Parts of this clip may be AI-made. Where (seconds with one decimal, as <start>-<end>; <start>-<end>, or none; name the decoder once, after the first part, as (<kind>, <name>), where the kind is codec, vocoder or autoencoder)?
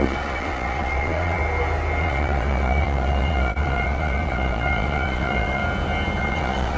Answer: 0.0-1.4 (vocoder, Vocos); 2.0-5.6; 6.2-6.8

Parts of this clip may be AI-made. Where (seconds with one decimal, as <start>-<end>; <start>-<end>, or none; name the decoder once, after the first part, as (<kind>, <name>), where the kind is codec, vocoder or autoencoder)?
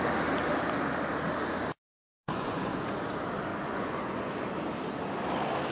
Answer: 1.9-3.0 (vocoder, Vocos); 3.5-4.5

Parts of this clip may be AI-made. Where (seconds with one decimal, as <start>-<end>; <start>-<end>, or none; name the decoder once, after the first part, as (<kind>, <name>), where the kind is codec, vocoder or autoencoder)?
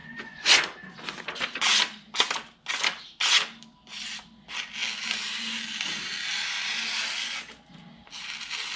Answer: 0.0-0.6 (vocoder, Vocos)